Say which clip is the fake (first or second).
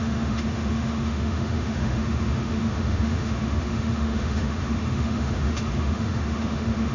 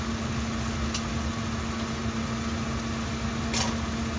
first